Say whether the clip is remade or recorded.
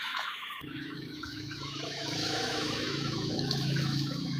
remade